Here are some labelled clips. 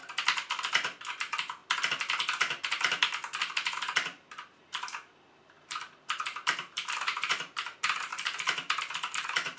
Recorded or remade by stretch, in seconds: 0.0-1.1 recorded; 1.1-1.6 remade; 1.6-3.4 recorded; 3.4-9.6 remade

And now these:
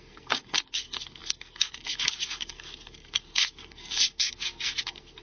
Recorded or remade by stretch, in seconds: 0.0-5.2 remade

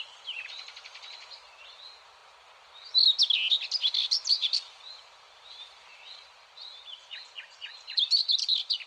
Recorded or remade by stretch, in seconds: 0.0-2.2 remade; 2.2-3.5 recorded; 3.5-8.9 remade

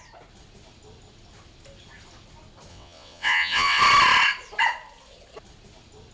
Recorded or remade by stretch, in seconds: 0.0-2.7 recorded; 2.7-3.8 remade; 3.8-6.1 recorded

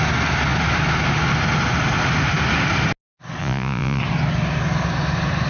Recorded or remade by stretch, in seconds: 0.0-3.4 recorded; 3.4-4.0 remade; 4.0-5.5 recorded